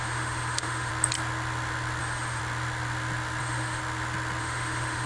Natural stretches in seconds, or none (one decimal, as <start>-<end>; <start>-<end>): 0.9-2.0; 2.4-3.4; 3.8-4.4